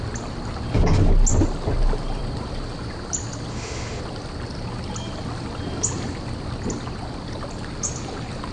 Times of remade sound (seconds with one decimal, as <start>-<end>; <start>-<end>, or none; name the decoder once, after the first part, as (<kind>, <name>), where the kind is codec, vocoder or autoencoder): 3.5-4.0 (autoencoder, DAC-VAE)